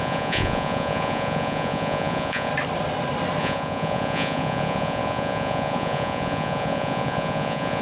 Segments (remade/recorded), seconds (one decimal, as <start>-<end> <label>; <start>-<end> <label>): 0.0-2.5 remade; 2.5-3.4 recorded; 3.4-7.8 remade